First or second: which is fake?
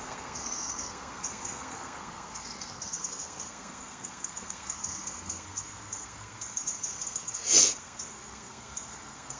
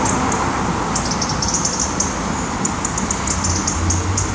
first